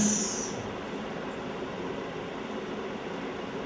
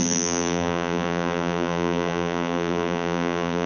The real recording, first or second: first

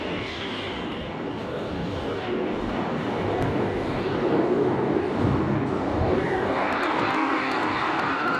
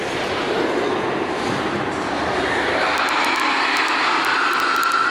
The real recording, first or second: second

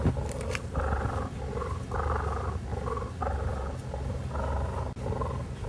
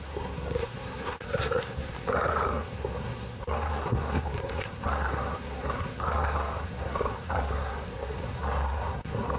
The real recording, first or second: first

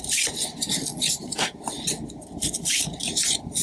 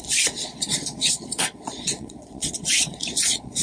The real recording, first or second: first